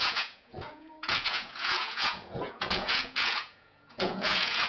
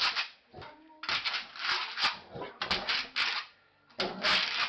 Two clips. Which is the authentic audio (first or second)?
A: second